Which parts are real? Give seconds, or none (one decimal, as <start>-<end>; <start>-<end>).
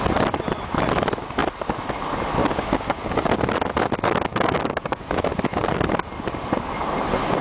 0.0-2.4; 3.3-4.3; 5.3-7.4